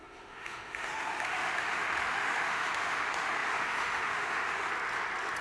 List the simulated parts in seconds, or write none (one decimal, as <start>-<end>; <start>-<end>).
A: 0.0-4.7